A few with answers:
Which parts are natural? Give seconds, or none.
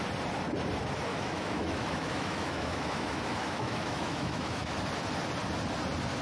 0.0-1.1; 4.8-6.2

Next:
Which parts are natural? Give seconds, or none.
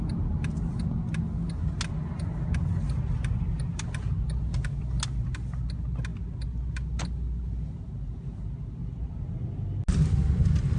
0.0-10.8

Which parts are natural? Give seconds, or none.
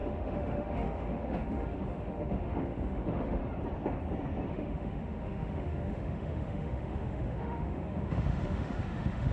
3.4-4.5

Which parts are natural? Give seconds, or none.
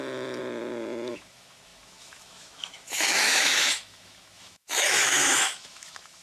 0.4-1.1